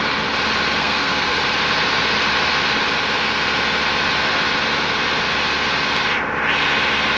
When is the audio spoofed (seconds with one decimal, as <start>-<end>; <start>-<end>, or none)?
0.8-1.4